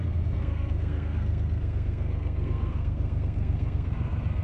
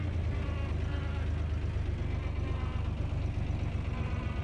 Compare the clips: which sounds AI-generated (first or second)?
first